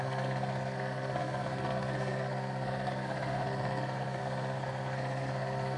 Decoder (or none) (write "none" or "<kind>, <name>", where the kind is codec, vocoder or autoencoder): codec, SNAC